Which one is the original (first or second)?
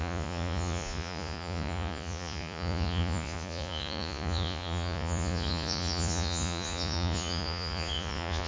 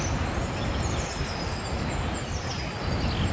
second